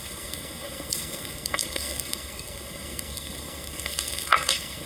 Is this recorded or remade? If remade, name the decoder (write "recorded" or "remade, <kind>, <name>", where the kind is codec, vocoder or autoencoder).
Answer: remade, codec, SNAC